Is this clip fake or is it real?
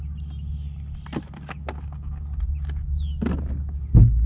real